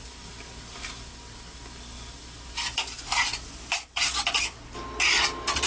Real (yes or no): yes